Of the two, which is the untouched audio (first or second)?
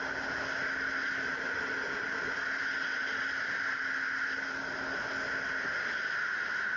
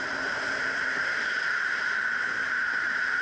first